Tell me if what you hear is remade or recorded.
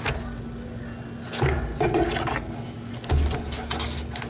recorded